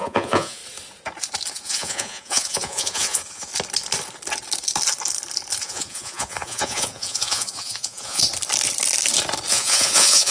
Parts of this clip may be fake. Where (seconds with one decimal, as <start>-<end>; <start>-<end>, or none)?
0.0-0.6; 1.5-3.5; 5.6-8.2; 9.5-10.3